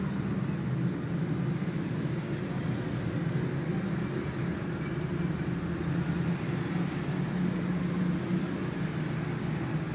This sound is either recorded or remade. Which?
recorded